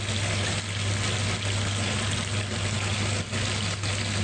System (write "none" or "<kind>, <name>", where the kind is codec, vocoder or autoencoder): none